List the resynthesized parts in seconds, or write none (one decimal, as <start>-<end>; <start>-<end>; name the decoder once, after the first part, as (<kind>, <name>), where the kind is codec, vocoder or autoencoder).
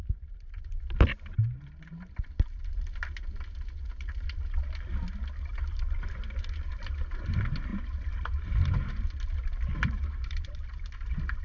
none